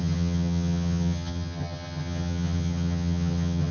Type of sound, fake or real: fake